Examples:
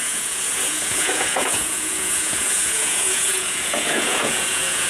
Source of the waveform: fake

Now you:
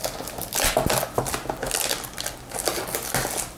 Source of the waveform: real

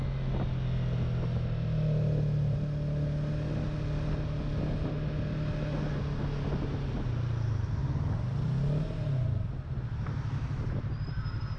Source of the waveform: real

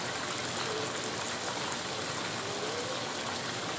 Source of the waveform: real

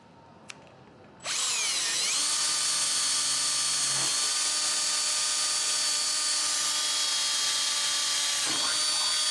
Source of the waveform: real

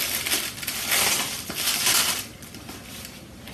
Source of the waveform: fake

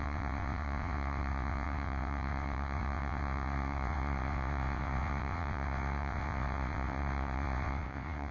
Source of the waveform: fake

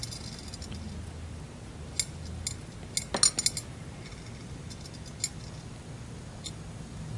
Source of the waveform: real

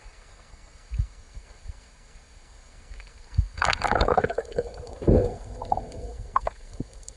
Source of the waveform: fake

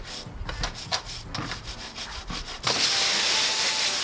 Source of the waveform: real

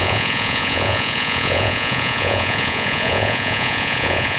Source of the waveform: fake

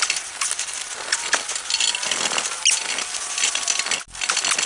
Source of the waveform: real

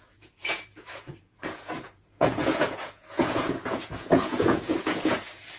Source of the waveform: fake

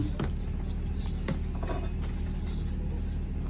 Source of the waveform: real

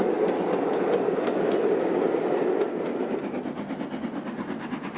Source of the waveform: real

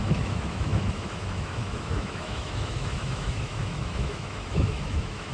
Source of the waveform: fake